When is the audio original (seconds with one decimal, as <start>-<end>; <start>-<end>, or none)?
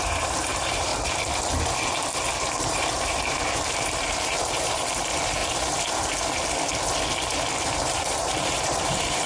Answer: 0.9-2.4; 5.4-7.5